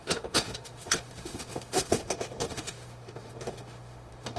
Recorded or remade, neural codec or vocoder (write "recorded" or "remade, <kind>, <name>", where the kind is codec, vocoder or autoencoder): remade, autoencoder, DAC-VAE